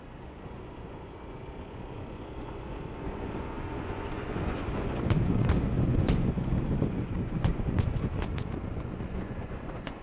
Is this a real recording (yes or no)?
no